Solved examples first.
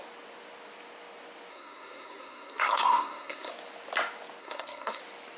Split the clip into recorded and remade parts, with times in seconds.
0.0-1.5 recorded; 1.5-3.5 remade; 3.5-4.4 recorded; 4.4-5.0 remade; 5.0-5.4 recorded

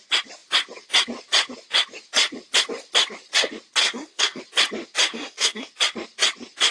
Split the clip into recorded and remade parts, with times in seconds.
0.0-3.8 recorded; 3.8-4.4 remade; 4.4-5.1 recorded; 5.1-5.7 remade; 5.7-6.7 recorded

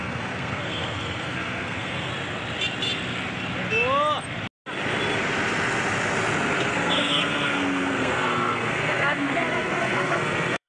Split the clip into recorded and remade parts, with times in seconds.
0.0-2.1 remade; 2.1-6.7 recorded; 6.7-10.7 remade